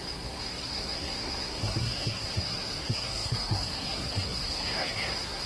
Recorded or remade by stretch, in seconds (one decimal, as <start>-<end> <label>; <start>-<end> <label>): 0.0-5.5 remade